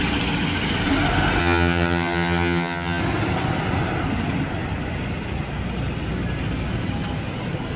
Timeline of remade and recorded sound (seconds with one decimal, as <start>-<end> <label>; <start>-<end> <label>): 0.0-1.4 recorded; 1.4-3.0 remade; 3.0-7.8 recorded